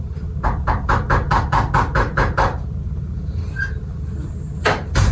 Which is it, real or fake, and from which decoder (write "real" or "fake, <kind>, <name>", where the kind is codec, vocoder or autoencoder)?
real